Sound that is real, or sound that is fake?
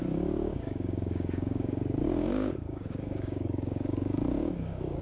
fake